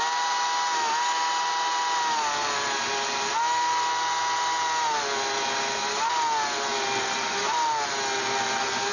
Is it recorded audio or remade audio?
recorded